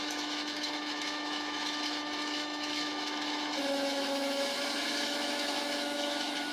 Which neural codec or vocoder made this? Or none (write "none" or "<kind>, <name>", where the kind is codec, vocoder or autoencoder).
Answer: autoencoder, DAC-VAE